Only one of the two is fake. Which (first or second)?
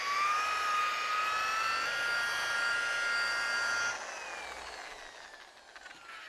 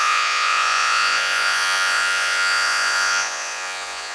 second